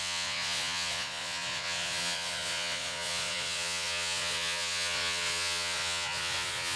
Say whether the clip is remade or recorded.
remade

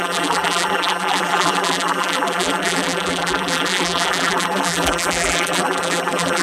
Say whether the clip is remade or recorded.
remade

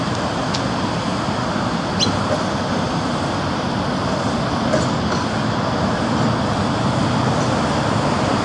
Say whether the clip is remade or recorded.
recorded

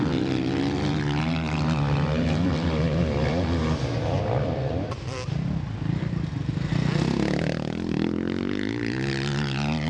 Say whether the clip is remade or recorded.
recorded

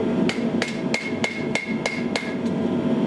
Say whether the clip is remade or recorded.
recorded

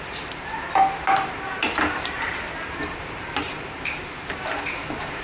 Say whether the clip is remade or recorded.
remade